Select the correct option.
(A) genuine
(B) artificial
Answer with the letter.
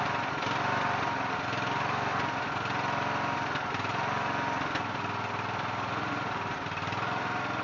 A